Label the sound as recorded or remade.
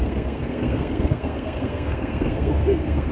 remade